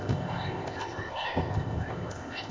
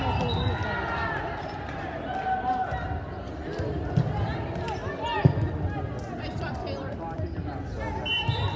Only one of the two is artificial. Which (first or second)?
first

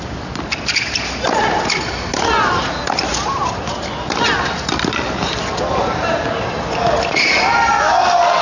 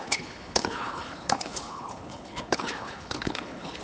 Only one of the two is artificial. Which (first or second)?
second